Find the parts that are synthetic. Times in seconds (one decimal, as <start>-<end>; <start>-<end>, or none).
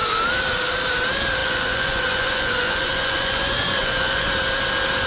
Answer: 1.4-4.3